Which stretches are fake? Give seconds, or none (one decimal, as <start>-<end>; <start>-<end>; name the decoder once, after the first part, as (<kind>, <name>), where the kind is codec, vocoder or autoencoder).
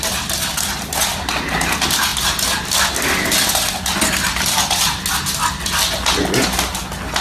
none